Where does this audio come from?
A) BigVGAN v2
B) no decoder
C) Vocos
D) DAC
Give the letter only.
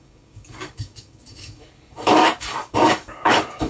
D